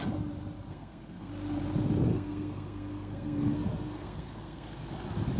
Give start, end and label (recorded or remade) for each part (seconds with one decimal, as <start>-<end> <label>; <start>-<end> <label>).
0.0-0.7 recorded; 0.7-1.3 remade; 1.3-2.1 recorded; 2.1-4.9 remade; 4.9-5.4 recorded